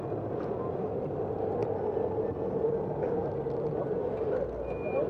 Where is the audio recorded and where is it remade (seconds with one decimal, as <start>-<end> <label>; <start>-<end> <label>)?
0.0-1.6 recorded; 1.6-2.1 remade; 2.1-3.2 recorded; 3.2-4.1 remade; 4.1-5.1 recorded